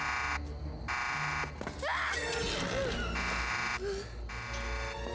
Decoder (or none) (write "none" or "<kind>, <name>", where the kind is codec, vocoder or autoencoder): none